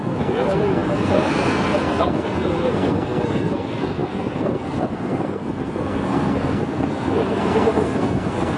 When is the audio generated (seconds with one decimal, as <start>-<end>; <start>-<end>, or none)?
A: 0.0-8.6